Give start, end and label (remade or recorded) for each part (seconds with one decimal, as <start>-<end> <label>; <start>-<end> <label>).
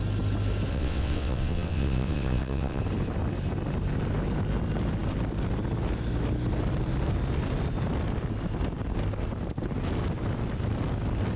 0.0-0.7 recorded; 0.7-2.8 remade; 2.8-11.4 recorded